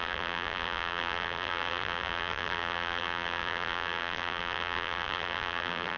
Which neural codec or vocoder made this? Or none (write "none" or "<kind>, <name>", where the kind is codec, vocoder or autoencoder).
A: vocoder, BigVGAN v2